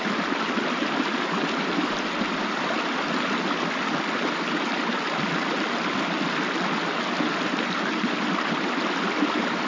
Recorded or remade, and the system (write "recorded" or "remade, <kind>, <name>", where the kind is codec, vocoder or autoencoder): recorded